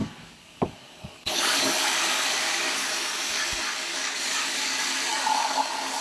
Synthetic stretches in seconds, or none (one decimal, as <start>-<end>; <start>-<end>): 0.0-6.0